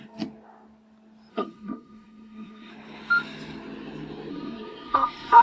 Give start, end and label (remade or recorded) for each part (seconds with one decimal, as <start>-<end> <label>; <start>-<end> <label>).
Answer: 0.0-1.3 recorded; 1.3-2.7 remade; 2.7-4.3 recorded; 4.3-5.4 remade